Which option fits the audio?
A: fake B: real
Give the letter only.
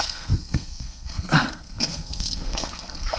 A